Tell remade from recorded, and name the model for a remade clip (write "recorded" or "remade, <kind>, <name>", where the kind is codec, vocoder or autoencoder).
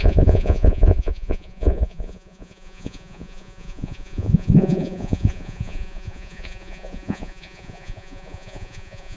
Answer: remade, vocoder, Vocos